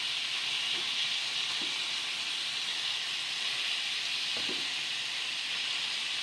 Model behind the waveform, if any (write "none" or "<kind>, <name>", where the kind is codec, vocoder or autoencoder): none